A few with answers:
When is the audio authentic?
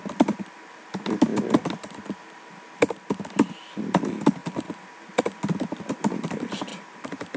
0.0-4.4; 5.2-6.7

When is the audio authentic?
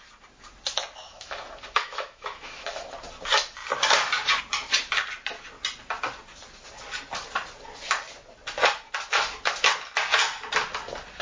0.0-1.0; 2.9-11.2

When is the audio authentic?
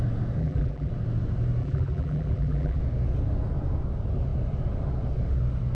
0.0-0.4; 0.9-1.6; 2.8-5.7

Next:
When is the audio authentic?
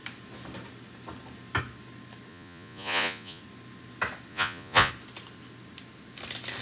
0.0-2.3; 3.4-4.3; 4.9-6.6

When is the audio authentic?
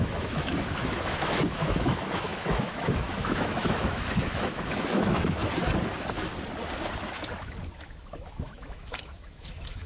5.4-7.8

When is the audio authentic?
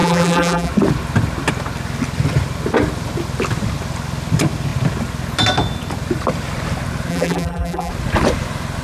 0.7-7.1; 7.9-8.8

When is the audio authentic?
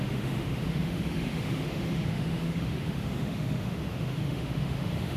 none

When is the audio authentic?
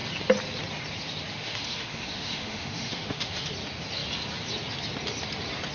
0.0-1.3; 3.5-5.7